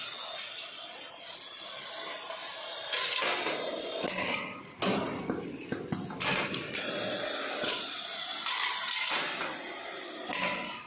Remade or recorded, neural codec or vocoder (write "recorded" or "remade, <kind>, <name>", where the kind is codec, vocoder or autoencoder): recorded